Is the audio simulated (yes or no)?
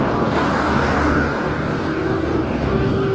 yes